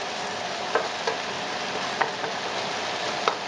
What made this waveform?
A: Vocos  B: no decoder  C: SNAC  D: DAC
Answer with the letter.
B